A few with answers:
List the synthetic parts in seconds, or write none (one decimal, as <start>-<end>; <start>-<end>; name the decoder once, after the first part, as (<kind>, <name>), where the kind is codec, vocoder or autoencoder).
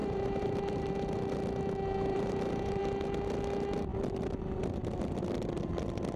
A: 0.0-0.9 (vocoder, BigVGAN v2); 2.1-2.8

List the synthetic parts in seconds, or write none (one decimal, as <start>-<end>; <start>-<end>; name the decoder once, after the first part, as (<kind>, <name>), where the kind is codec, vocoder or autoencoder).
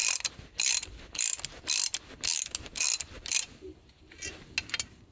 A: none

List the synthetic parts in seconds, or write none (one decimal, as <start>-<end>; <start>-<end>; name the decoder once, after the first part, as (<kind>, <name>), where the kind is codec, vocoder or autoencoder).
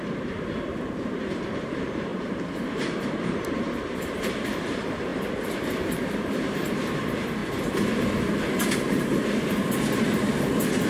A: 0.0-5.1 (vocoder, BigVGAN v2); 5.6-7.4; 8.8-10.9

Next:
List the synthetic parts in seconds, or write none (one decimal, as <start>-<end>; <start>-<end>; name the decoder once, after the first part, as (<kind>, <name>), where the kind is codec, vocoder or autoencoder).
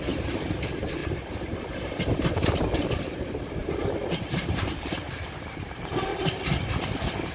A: 0.0-6.1 (vocoder, BigVGAN v2)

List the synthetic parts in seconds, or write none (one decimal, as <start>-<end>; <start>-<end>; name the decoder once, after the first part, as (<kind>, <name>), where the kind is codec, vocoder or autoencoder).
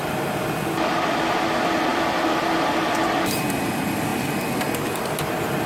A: 1.9-3.4 (vocoder, BigVGAN v2); 4.1-4.6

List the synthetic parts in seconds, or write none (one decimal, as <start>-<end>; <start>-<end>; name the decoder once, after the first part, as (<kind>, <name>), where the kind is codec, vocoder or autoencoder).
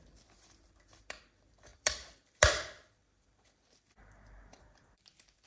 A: 0.0-5.5 (vocoder, BigVGAN v2)